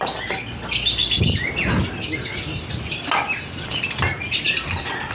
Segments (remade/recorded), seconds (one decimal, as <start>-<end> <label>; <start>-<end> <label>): 0.0-5.1 recorded